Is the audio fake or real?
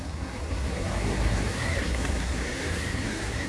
fake